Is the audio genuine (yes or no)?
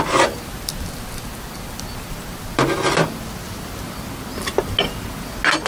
yes